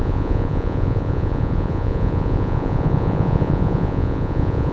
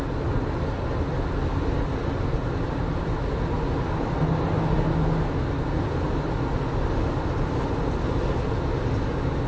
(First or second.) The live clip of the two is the second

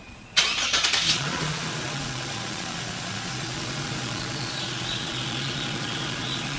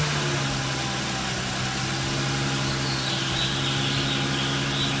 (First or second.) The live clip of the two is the second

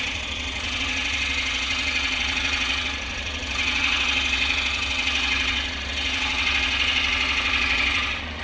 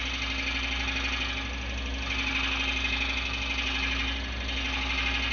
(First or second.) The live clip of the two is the second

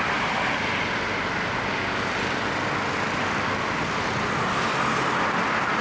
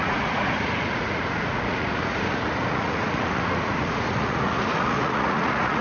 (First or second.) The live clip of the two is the first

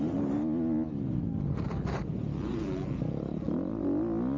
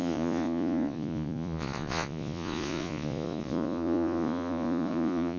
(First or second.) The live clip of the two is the first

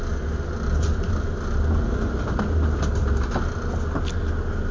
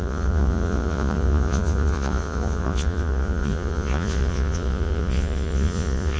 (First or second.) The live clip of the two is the first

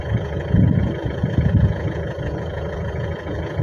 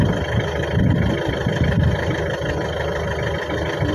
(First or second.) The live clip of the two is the second